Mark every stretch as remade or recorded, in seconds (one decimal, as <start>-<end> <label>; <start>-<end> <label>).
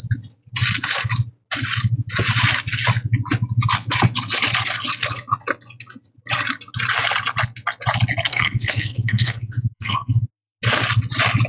0.0-8.3 recorded; 8.3-10.2 remade; 10.2-11.5 recorded